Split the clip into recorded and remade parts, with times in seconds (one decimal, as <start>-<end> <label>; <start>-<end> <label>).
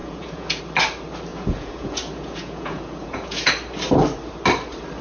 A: 0.0-0.6 remade; 0.6-1.3 recorded; 1.3-3.5 remade; 3.5-5.0 recorded